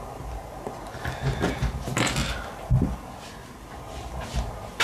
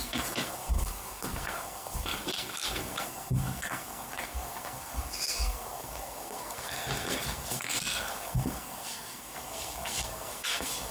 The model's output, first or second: second